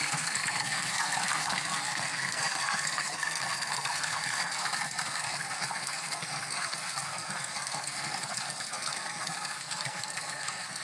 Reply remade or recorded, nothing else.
remade